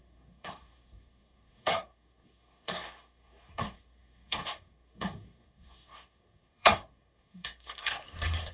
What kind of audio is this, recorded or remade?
remade